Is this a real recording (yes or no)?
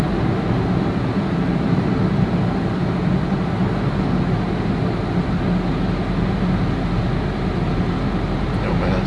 yes